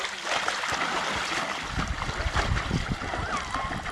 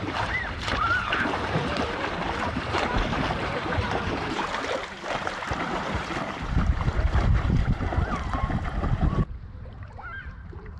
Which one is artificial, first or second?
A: second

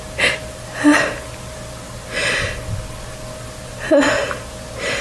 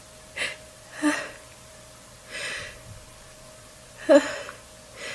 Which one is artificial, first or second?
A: second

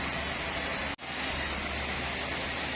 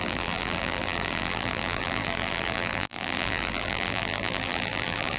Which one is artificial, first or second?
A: second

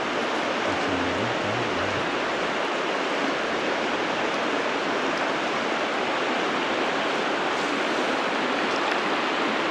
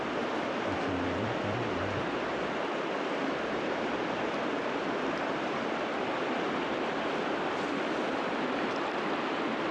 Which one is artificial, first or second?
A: second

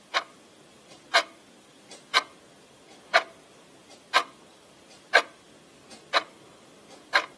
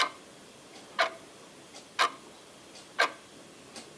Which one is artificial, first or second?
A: first